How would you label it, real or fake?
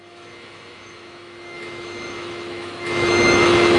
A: fake